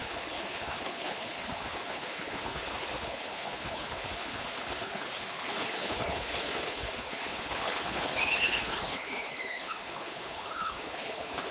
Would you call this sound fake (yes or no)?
yes